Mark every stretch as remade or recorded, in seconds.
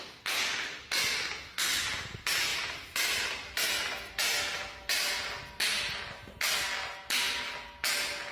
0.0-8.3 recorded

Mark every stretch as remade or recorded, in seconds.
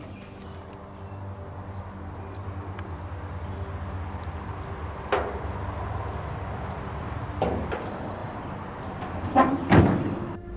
0.0-8.2 recorded; 8.2-9.8 remade; 9.8-10.6 recorded